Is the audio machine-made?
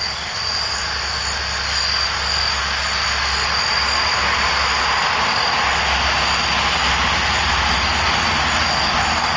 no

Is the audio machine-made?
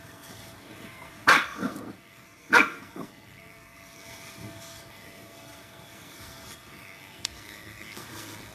yes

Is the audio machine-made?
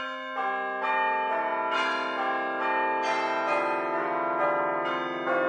no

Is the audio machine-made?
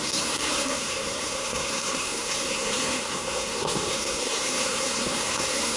yes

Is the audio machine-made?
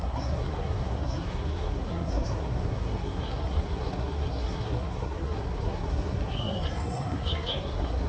yes